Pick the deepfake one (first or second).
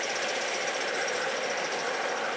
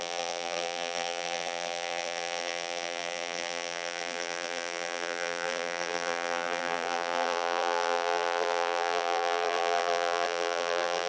second